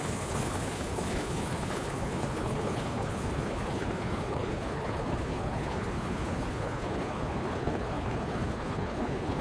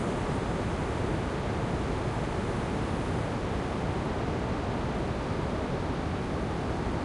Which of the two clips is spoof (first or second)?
first